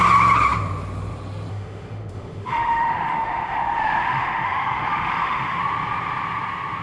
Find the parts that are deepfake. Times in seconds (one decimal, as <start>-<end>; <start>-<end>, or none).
1.5-5.6